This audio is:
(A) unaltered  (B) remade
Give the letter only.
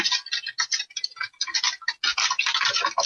A